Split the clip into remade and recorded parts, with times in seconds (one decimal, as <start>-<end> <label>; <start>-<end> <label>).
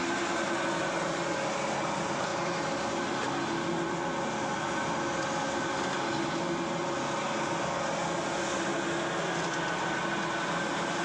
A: 0.0-11.0 recorded